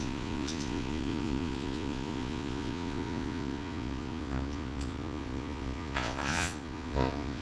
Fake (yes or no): yes